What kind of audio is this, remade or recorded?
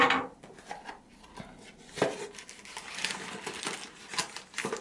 recorded